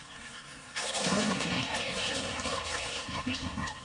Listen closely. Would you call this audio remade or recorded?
remade